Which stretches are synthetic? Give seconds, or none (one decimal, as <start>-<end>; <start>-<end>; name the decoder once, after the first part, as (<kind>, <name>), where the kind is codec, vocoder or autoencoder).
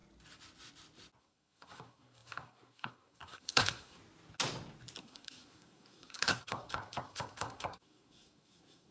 1.2-4.0 (codec, SNAC); 5.0-8.9